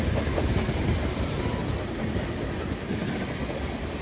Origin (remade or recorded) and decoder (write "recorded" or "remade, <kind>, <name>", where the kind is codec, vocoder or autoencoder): recorded